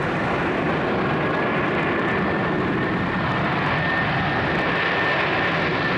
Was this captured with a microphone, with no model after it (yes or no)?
yes